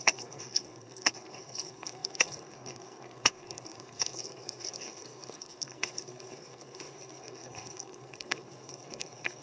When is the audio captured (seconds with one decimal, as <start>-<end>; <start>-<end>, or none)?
none